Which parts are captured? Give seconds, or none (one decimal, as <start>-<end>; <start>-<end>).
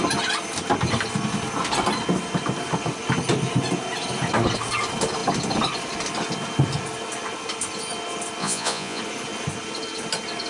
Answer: 0.0-8.4; 9.0-10.5